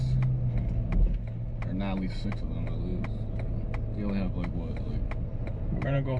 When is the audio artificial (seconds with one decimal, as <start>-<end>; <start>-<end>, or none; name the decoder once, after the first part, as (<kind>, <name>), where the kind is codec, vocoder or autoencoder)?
5.3-6.2 (vocoder, BigVGAN v2)